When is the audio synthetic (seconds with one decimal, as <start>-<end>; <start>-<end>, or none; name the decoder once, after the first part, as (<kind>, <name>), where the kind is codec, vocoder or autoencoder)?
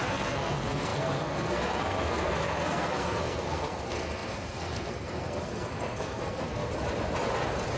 0.0-6.7 (codec, SNAC)